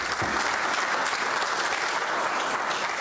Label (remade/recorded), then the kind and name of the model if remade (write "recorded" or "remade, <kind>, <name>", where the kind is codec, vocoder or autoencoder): recorded